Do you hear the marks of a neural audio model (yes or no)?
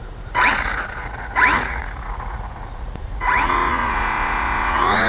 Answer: yes